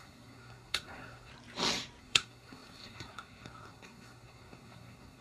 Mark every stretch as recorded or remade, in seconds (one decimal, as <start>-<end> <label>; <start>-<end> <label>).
0.0-1.3 remade; 1.3-2.0 recorded; 2.0-5.2 remade